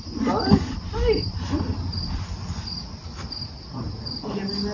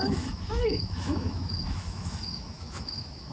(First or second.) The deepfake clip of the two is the second